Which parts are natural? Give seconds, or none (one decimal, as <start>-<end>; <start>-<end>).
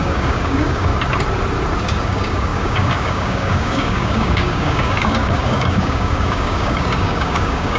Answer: 0.9-1.8